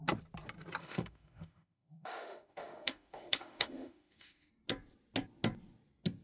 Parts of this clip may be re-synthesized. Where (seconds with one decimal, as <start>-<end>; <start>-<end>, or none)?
0.8-4.5